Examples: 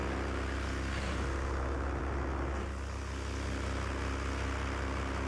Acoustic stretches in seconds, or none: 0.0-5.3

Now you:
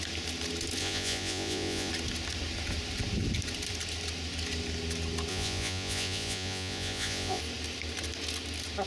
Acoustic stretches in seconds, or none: 0.0-0.8; 1.9-5.3; 7.4-8.9

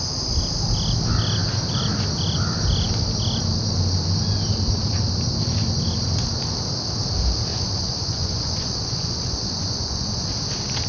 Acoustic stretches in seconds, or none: 0.0-7.5; 10.3-10.9

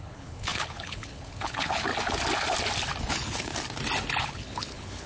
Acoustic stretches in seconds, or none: 1.9-3.1; 3.5-4.2

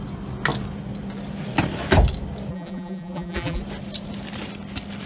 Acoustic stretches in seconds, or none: 0.0-2.5; 3.6-5.1

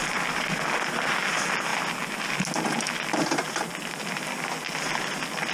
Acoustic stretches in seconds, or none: 0.0-5.5